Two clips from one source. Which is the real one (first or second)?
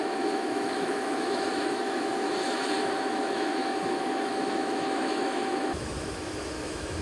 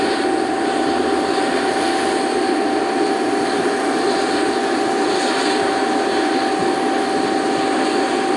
second